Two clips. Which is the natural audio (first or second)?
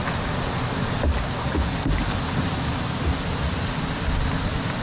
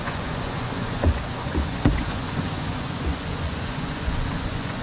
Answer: first